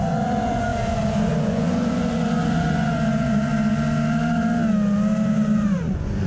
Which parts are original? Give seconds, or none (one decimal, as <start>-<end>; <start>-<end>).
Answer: 3.5-5.3